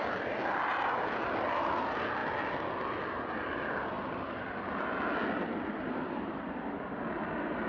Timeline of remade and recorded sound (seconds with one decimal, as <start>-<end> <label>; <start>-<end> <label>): 0.0-7.7 recorded